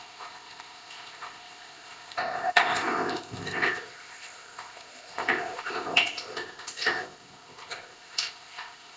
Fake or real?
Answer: fake